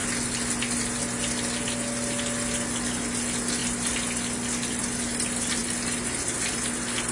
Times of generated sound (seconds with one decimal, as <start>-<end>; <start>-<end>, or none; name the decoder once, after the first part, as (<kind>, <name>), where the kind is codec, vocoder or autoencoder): none